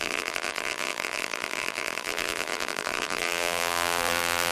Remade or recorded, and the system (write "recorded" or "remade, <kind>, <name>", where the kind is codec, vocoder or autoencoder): remade, vocoder, BigVGAN v2